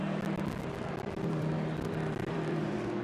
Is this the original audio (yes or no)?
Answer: no